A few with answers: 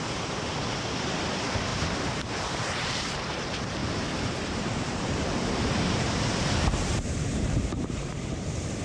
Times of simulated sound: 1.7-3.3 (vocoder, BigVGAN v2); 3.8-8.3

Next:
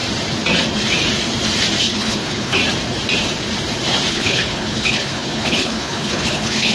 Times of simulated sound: 1.8-2.6 (codec, HILCodec); 4.1-6.7

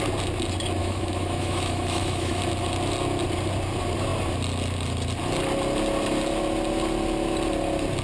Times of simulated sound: 0.8-2.4 (autoencoder, DAC-VAE)

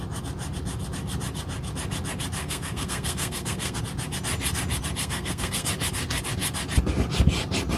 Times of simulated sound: 2.4-3.8 (codec, SNAC); 5.0-5.7